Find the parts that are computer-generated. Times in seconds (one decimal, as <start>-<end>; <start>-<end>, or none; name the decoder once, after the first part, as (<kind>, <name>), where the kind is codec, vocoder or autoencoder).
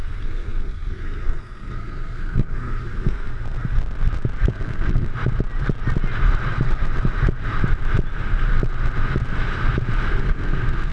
0.0-3.3 (codec, SNAC); 4.5-5.1; 10.1-10.9